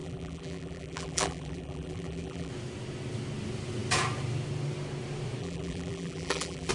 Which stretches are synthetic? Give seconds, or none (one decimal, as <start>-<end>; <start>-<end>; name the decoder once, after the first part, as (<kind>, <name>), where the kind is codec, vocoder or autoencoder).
0.0-2.5 (vocoder, BigVGAN v2); 5.4-6.7